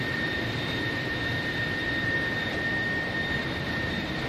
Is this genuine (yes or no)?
no